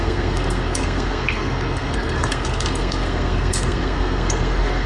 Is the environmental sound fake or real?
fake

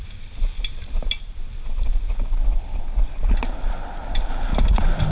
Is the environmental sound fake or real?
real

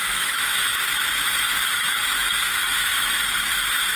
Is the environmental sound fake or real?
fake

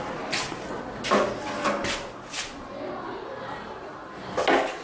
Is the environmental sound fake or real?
real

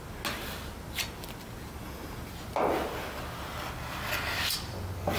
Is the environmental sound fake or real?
real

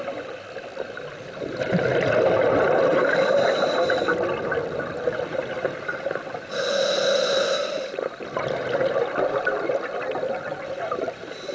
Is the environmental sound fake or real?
real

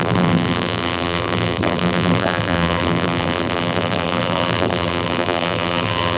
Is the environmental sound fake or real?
fake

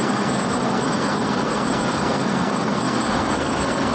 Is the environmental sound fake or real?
fake